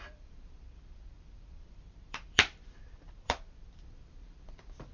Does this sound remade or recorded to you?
remade